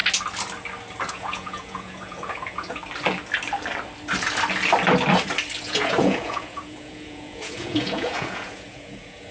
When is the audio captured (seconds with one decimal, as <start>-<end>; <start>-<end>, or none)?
0.0-1.1; 2.8-5.6